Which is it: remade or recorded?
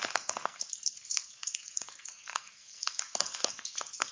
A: remade